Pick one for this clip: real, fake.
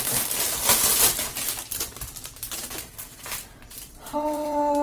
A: fake